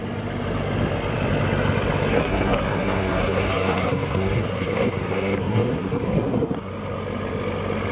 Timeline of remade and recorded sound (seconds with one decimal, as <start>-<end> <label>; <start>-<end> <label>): 0.0-2.1 recorded; 2.1-6.7 remade; 6.7-7.9 recorded